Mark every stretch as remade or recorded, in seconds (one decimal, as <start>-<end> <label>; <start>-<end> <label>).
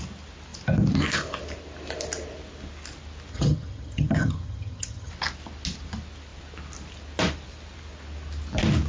0.0-3.3 recorded; 3.3-5.1 remade; 5.1-8.9 recorded